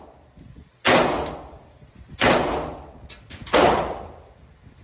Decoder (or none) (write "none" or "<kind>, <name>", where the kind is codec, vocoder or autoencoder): none